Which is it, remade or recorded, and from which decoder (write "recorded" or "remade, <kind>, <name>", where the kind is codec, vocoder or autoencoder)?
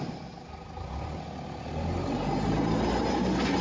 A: recorded